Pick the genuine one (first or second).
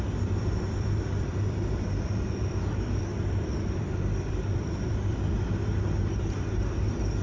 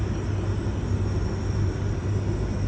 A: second